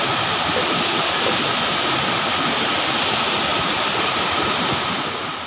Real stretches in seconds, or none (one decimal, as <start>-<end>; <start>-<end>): 0.0-3.5; 4.7-5.5